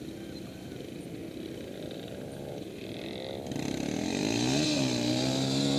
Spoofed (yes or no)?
no